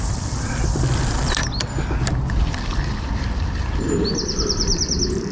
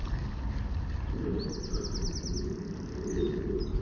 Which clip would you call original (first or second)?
second